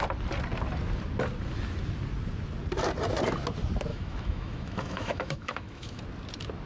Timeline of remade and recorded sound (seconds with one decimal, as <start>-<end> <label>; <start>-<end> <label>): 0.0-3.9 recorded; 3.9-6.0 remade; 6.0-6.7 recorded